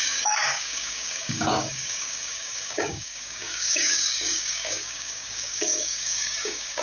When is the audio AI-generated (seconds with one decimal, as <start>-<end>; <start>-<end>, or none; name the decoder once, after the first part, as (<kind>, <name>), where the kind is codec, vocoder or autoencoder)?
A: 0.0-6.8 (codec, DAC)

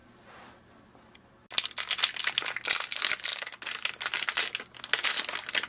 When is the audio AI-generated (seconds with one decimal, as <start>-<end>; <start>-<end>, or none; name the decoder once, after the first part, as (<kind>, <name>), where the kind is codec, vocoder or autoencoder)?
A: none

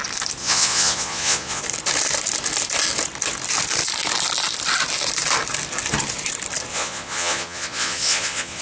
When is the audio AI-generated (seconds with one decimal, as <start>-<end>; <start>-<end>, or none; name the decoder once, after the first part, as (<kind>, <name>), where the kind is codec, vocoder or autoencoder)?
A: 0.4-1.6 (vocoder, Vocos); 6.7-8.6

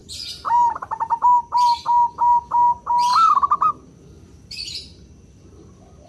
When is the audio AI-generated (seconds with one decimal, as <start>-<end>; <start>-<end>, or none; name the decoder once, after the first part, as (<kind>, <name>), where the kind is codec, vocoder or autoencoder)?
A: 0.0-1.8 (vocoder, BigVGAN v2); 3.1-3.7

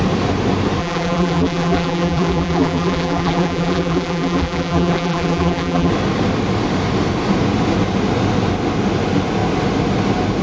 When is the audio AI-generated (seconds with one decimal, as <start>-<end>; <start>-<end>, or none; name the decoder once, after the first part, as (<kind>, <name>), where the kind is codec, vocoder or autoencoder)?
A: 0.8-5.9 (vocoder, BigVGAN v2)

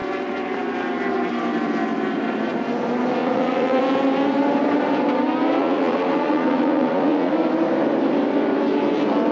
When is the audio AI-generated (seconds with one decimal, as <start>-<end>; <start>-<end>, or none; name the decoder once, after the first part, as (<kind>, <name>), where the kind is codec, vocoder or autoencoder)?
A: 3.2-3.8 (vocoder, Vocos); 5.6-7.3

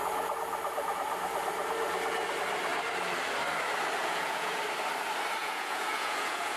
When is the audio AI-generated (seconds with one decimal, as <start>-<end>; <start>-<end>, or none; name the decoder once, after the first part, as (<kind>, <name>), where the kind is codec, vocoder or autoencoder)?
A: 4.0-4.6 (vocoder, Vocos); 5.4-6.6